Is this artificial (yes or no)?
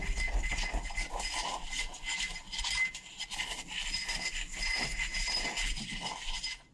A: no